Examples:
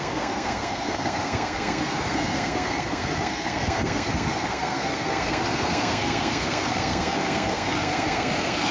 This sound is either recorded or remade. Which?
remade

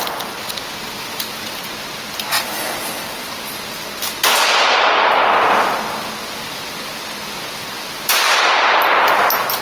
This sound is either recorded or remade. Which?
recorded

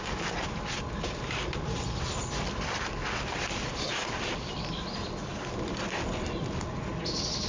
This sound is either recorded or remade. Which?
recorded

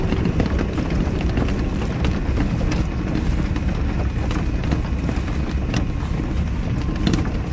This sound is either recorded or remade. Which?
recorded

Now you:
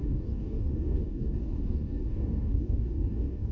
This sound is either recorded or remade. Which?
remade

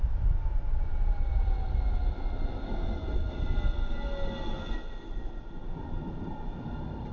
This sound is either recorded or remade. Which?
recorded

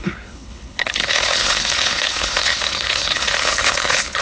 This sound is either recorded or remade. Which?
remade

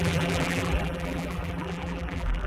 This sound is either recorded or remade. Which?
remade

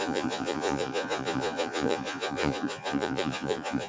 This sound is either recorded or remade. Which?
remade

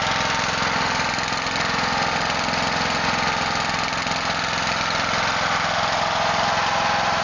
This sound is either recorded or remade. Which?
recorded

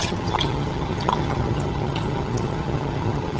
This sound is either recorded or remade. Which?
remade